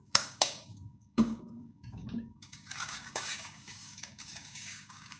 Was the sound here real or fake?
fake